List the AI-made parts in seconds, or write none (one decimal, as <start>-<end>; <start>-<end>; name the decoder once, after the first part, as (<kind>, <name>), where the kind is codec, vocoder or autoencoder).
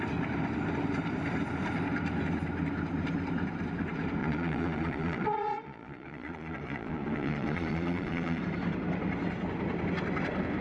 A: 4.2-8.4 (vocoder, Vocos)